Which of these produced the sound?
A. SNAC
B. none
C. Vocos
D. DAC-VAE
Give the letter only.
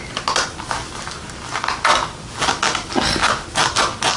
B